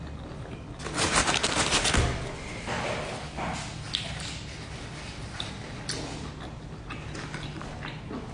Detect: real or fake real